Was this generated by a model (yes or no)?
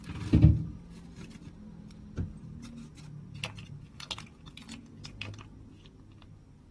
no